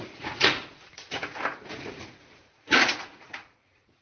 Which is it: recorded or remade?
remade